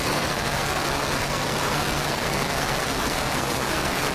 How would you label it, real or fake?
fake